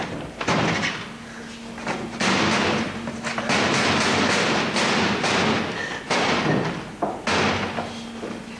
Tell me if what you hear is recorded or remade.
recorded